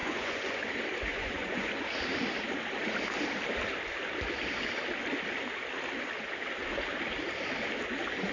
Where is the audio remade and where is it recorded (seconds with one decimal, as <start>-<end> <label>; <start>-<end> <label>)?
0.0-0.6 remade; 0.6-1.1 recorded; 1.1-1.7 remade; 1.7-8.3 recorded